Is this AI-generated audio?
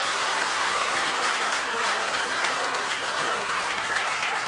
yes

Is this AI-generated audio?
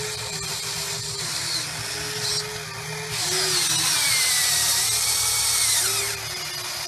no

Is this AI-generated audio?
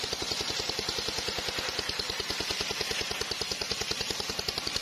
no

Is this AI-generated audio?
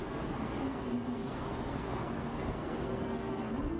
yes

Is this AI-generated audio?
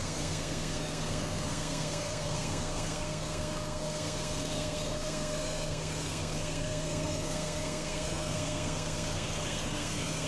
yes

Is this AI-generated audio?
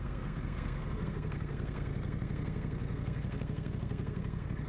yes